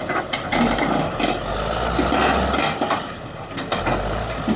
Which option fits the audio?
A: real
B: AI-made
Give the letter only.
A